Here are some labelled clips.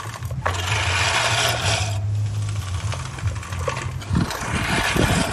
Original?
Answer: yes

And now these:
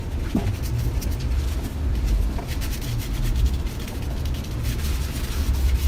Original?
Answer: yes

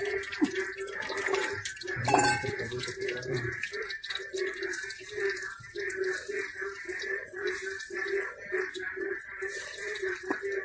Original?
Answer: no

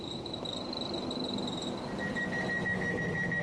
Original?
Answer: yes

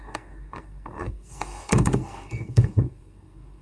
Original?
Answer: no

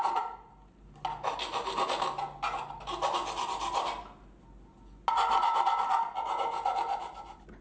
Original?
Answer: yes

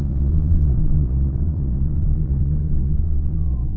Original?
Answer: no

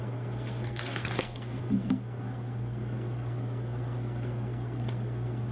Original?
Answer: no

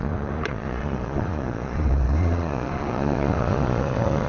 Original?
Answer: no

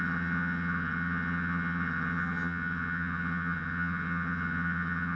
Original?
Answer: no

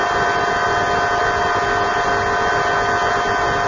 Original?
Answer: yes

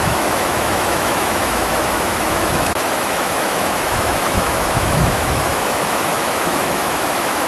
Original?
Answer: no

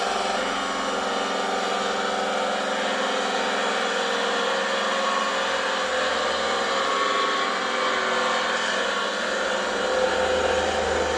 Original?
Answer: yes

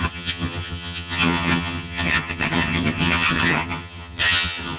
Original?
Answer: no